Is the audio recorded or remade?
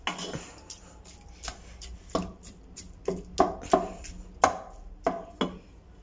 recorded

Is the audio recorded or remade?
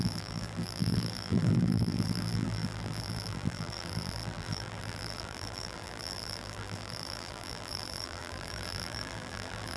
remade